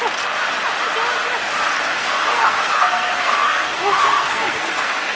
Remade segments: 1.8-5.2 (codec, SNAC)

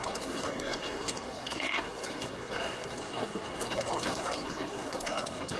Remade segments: 0.0-5.6 (codec, SNAC)

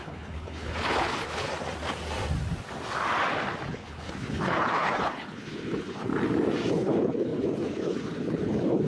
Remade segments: 0.0-1.5 (codec, HILCodec); 3.7-6.1; 6.7-8.9

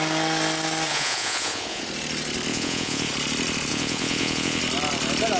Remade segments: 0.9-1.8 (vocoder, Vocos); 2.5-3.1; 3.7-4.6